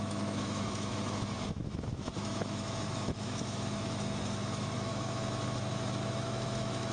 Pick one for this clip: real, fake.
fake